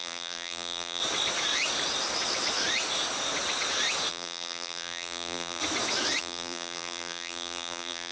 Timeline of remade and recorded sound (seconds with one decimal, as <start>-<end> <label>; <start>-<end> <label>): 0.0-1.0 remade; 1.0-4.1 recorded; 4.1-5.6 remade; 5.6-6.2 recorded; 6.2-8.1 remade